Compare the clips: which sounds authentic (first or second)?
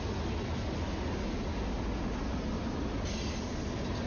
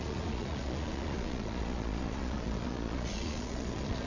first